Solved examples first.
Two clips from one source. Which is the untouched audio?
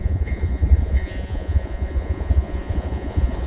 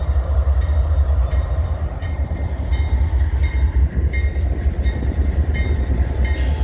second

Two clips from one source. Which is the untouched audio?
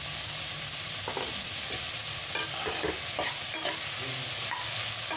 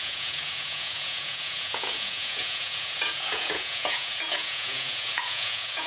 first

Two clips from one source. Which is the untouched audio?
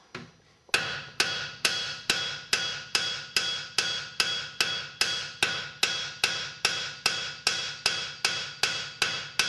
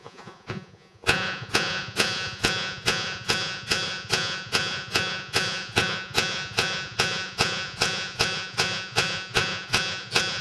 first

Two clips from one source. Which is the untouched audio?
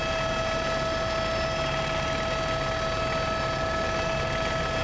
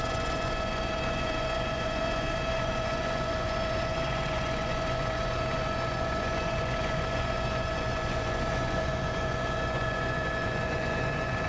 first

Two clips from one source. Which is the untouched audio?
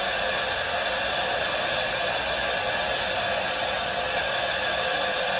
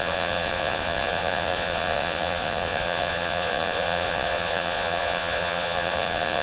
first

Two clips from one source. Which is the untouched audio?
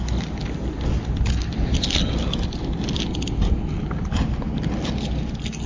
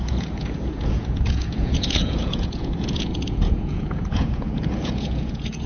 first